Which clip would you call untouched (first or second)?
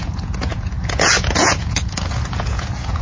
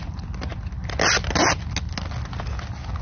second